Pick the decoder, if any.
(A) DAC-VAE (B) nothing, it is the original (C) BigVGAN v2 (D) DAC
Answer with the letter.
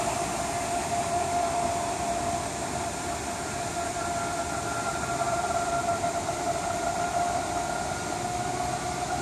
C